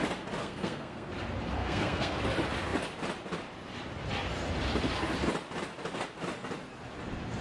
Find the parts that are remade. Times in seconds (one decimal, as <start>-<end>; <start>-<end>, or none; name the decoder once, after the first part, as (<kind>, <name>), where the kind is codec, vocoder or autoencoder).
0.4-1.1 (codec, SNAC); 1.6-2.2